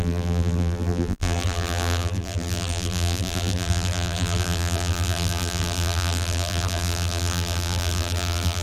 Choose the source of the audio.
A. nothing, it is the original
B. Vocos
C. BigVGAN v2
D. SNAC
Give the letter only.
C